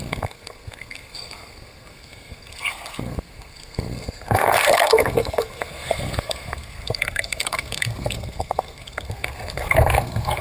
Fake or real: fake